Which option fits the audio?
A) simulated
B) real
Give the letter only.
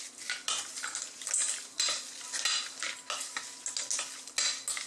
B